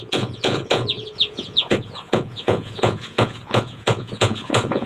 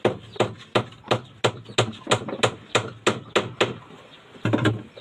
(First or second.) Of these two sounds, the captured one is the second